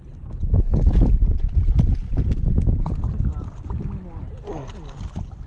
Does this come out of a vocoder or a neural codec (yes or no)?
no